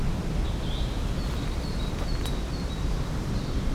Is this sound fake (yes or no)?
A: no